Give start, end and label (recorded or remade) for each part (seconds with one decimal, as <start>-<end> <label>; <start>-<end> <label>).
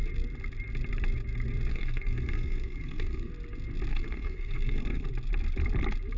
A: 0.0-1.7 recorded; 1.7-3.3 remade; 3.3-3.9 recorded; 3.9-5.1 remade; 5.1-6.2 recorded